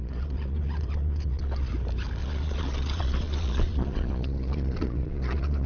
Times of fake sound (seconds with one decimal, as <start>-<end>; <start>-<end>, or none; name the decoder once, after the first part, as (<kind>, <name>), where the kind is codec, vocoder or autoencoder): 0.0-1.7 (vocoder, Vocos); 2.2-5.7